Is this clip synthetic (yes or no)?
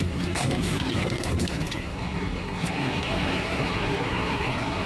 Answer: yes